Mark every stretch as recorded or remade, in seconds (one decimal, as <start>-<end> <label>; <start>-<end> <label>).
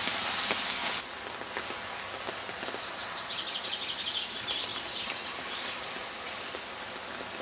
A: 0.0-7.4 recorded